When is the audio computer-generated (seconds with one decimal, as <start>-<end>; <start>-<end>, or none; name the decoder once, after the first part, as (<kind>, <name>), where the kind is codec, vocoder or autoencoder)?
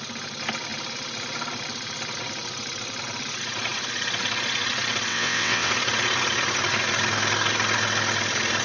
5.1-5.7 (vocoder, WaveNeXt)